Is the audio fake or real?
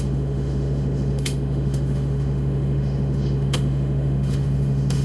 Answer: fake